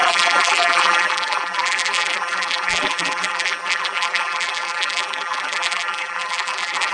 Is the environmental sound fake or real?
fake